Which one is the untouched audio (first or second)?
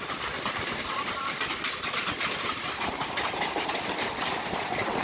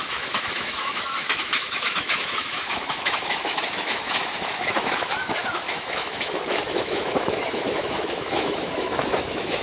first